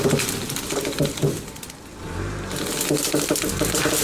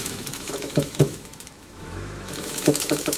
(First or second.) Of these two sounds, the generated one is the second